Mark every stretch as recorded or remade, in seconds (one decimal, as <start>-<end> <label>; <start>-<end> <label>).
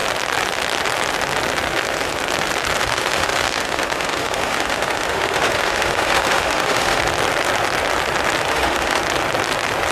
0.0-2.8 recorded; 2.8-7.0 remade; 7.0-8.5 recorded; 8.5-9.0 remade; 9.0-9.9 recorded